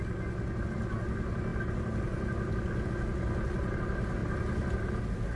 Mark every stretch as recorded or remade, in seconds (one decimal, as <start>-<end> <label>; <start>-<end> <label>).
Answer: 0.0-5.4 recorded